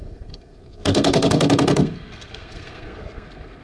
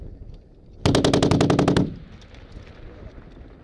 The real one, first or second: second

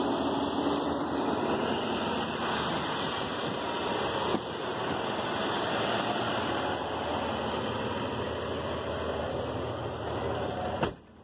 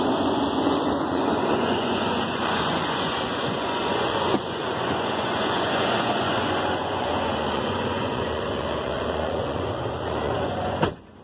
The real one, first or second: first